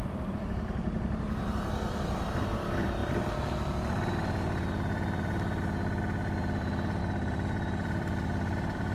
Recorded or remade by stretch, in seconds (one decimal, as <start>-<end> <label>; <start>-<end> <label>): 0.0-3.0 remade; 3.0-7.0 recorded; 7.0-8.9 remade